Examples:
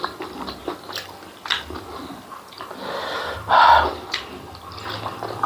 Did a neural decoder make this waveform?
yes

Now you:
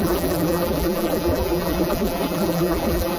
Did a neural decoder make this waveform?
yes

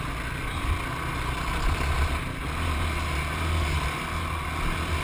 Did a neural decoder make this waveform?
no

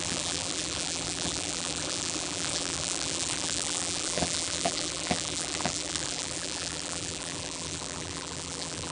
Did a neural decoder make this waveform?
yes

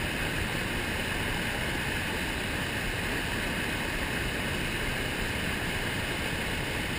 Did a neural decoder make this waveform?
no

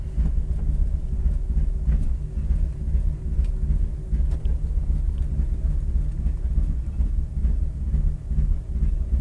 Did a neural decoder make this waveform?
no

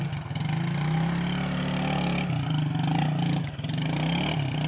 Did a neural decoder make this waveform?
no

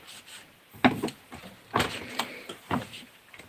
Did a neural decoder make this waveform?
yes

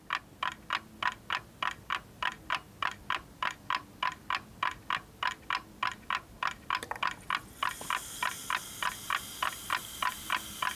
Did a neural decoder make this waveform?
no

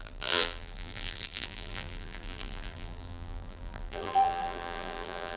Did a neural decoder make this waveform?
yes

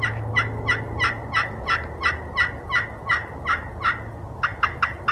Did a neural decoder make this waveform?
no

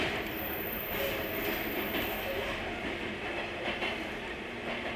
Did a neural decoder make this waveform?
no